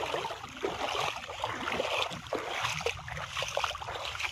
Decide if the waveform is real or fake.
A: real